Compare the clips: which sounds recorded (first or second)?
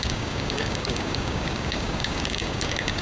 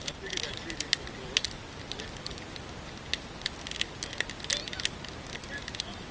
second